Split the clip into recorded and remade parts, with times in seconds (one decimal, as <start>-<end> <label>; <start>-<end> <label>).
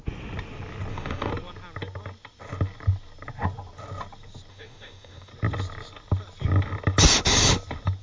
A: 0.0-0.9 recorded; 0.9-1.3 remade; 1.3-4.5 recorded; 4.5-5.3 remade; 5.3-8.0 recorded